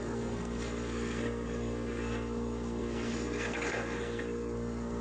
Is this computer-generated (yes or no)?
yes